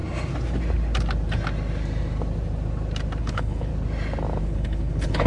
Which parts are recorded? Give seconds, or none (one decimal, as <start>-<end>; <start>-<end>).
0.0-3.2; 3.7-4.4